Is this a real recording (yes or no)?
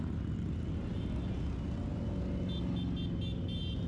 yes